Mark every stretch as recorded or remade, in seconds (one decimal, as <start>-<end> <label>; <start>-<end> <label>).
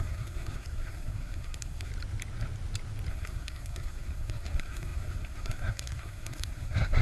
0.0-1.9 remade; 1.9-3.1 recorded; 3.1-7.0 remade